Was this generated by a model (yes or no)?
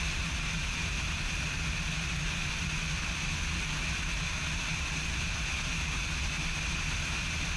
no